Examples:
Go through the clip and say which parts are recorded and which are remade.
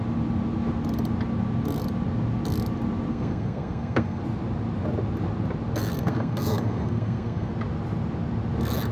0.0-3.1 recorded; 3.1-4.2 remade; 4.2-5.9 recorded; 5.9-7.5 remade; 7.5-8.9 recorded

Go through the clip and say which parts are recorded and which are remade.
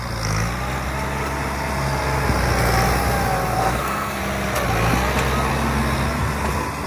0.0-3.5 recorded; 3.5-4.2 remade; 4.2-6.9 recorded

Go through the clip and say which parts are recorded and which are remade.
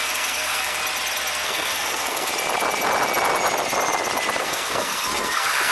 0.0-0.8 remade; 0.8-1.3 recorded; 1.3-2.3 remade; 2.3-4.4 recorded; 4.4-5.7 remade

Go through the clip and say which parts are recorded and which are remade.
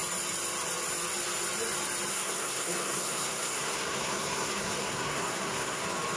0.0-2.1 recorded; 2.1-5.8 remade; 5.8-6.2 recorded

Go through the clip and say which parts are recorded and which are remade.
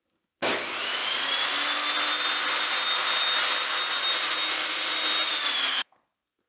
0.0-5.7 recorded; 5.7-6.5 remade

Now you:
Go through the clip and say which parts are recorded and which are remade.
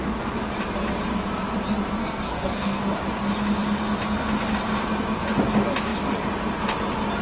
0.0-2.0 recorded; 2.0-2.8 remade; 2.8-7.2 recorded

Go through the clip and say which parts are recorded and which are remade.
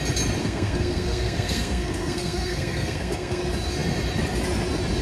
0.0-0.4 recorded; 0.4-3.4 remade; 3.4-5.0 recorded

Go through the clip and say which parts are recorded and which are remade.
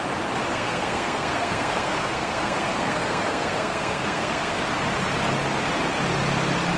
0.0-0.5 recorded; 0.5-4.6 remade; 4.6-6.8 recorded